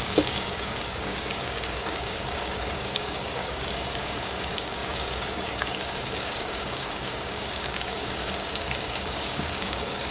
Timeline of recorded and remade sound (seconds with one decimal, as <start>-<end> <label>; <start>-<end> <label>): 0.0-10.1 remade